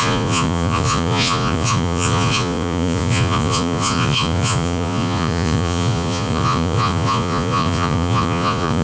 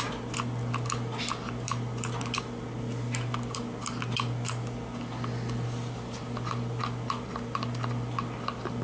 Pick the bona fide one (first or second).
second